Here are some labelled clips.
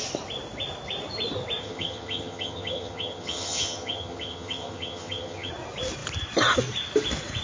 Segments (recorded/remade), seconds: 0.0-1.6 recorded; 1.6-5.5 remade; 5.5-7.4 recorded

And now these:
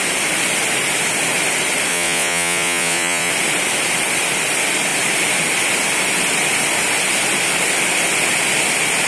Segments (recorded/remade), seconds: 0.0-1.9 recorded; 1.9-3.3 remade; 3.3-9.1 recorded

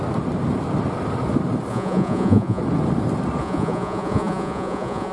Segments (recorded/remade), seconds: 0.0-1.7 recorded; 1.7-2.6 remade; 2.6-3.4 recorded; 3.4-5.1 remade

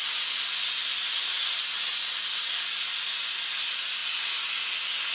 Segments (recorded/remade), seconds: 0.0-5.1 recorded